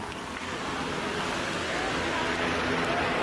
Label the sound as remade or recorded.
recorded